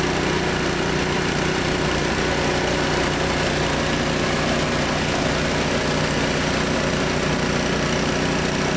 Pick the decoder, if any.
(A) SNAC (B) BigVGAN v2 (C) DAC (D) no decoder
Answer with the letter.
D